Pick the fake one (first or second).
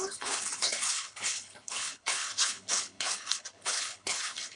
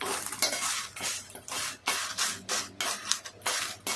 first